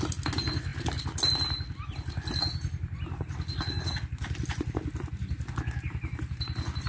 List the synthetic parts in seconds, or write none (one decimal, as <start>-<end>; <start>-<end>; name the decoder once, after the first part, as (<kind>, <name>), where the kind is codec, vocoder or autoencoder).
none